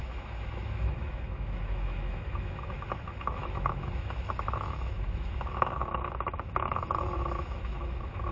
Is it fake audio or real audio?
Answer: fake